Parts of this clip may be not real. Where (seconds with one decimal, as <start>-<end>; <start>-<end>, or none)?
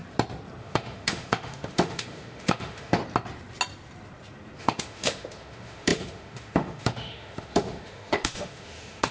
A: 0.6-3.0; 4.6-9.1